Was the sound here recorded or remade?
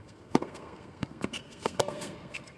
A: remade